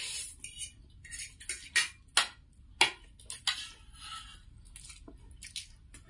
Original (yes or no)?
yes